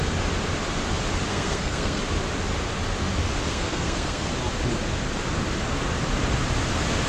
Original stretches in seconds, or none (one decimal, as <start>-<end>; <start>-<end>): 0.0-1.3; 2.0-3.5; 4.3-7.1